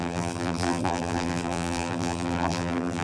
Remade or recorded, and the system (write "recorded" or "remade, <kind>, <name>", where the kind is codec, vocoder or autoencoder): remade, vocoder, BigVGAN v2